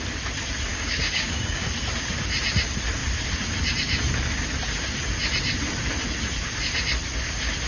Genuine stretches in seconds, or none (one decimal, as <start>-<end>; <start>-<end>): 0.0-0.7; 1.6-7.7